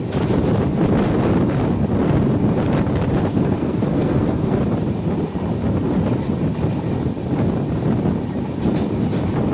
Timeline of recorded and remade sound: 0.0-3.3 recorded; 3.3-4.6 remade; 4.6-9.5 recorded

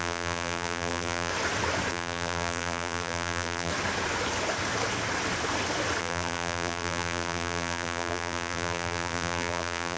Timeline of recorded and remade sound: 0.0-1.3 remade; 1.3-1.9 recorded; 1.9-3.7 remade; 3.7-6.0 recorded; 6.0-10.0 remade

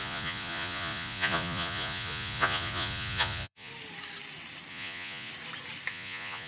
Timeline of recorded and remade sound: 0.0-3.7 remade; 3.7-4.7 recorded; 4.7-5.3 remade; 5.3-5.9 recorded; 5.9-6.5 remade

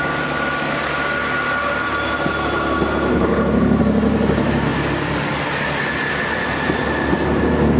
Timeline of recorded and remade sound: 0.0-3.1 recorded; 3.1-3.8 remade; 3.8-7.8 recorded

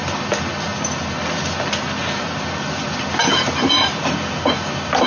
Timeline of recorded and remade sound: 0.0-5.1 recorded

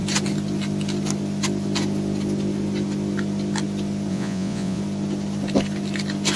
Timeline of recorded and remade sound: 0.0-4.1 recorded; 4.1-4.8 remade; 4.8-6.4 recorded

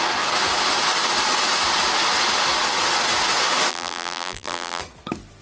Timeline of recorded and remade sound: 0.0-3.7 recorded; 3.7-4.8 remade; 4.8-5.4 recorded

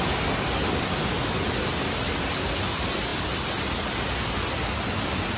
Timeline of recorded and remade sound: 0.0-5.4 recorded